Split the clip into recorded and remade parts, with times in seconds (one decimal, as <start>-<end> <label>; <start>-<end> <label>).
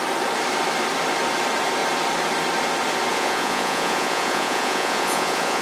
0.0-3.1 recorded; 3.1-5.6 remade